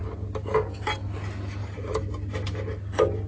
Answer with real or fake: real